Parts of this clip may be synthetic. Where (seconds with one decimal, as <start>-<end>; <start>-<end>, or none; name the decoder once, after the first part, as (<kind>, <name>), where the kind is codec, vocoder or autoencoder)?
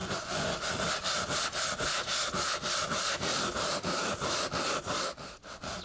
0.0-0.7 (vocoder, Vocos)